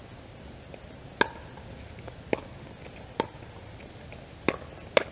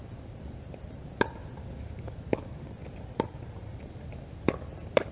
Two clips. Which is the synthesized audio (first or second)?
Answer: second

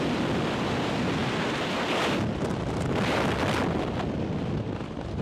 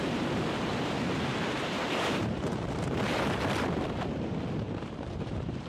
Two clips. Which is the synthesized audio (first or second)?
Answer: second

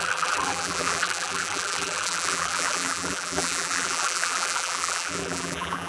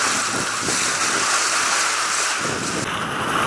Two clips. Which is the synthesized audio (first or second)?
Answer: first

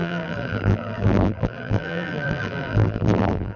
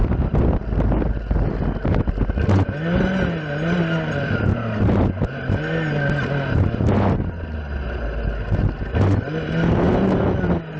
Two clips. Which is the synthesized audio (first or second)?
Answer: first